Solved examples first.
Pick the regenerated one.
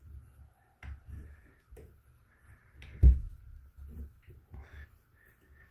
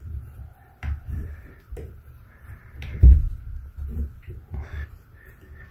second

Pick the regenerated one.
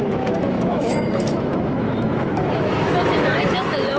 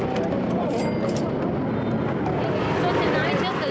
first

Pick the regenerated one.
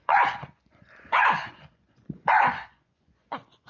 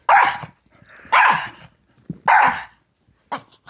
first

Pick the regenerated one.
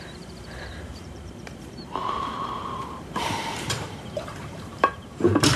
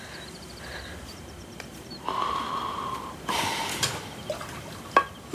first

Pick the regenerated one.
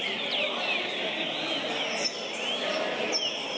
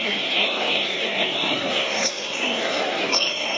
second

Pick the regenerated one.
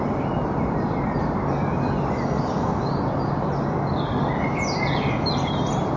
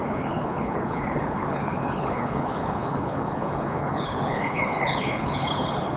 second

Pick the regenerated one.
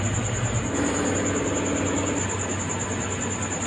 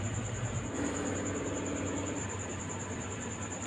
second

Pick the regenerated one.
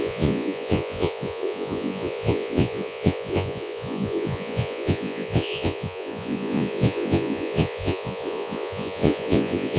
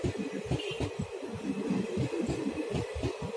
first